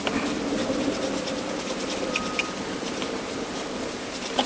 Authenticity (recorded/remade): recorded